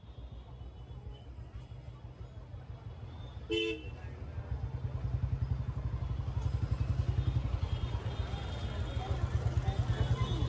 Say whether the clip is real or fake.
real